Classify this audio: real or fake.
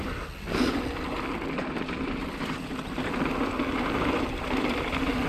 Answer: real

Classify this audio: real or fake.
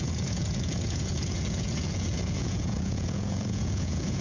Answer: fake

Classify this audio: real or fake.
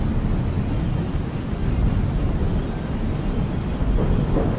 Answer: real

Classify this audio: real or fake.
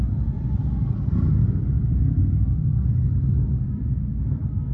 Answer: real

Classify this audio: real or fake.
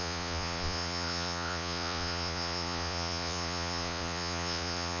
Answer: fake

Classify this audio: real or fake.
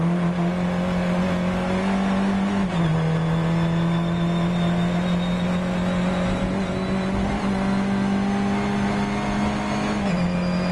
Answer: real